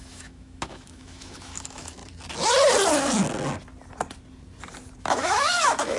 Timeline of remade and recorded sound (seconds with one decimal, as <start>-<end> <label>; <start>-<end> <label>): 0.0-2.0 remade; 2.0-5.0 recorded; 5.0-6.0 remade